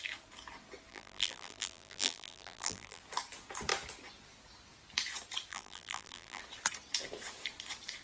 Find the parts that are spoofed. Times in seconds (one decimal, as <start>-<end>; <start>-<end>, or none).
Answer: 0.9-3.0; 5.5-6.4